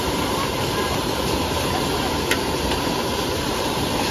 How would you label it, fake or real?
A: fake